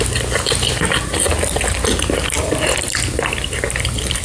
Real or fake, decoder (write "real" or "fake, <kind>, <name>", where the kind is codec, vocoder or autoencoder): real